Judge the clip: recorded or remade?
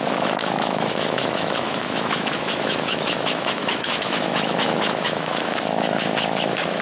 remade